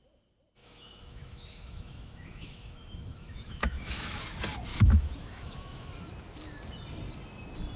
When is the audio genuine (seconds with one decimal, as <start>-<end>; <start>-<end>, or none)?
0.0-0.6; 4.2-4.7; 5.9-7.8